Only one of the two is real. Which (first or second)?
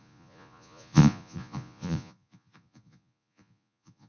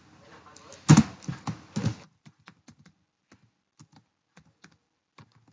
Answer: second